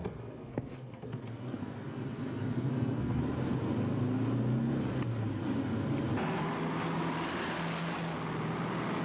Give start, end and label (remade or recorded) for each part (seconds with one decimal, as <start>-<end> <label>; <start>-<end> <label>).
0.0-3.2 remade; 3.2-9.0 recorded